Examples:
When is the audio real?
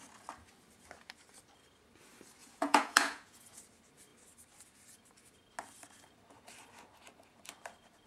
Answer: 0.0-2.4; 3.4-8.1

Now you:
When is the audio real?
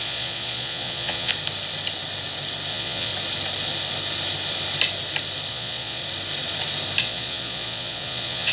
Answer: 1.3-2.7; 3.1-5.5; 6.0-7.0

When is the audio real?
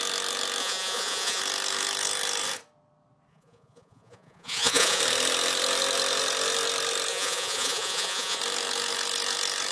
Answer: 0.0-0.6; 1.4-3.3; 5.0-7.1; 8.4-9.7